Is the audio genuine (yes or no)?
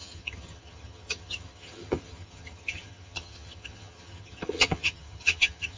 no